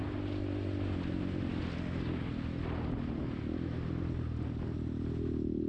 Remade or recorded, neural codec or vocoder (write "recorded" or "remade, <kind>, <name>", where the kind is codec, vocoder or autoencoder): recorded